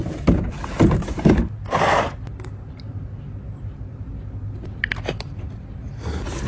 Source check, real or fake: real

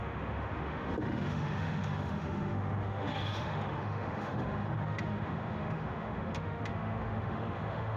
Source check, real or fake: fake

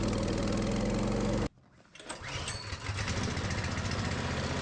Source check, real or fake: real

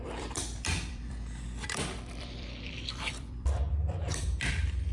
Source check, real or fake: fake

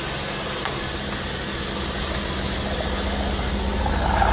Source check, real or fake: real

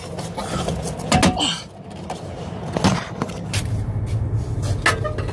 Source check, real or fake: real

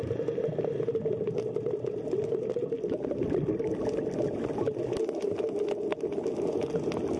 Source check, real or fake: real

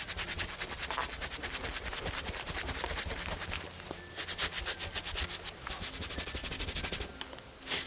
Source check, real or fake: real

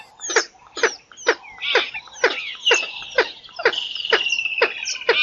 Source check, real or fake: real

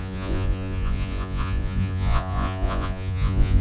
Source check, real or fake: fake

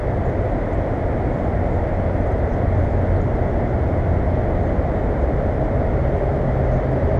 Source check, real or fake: real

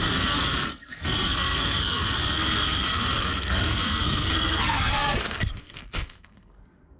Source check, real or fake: fake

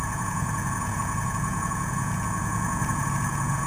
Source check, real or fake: fake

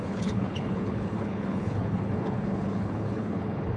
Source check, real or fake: fake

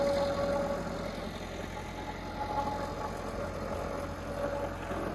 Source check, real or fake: real